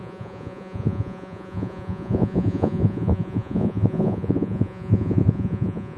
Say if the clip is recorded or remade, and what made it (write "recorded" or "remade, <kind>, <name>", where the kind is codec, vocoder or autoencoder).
remade, vocoder, Vocos